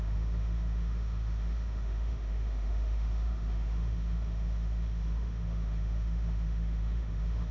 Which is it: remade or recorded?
remade